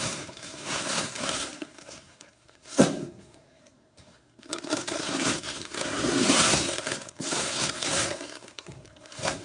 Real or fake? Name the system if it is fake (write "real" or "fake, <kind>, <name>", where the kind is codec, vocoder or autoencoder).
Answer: fake, codec, SNAC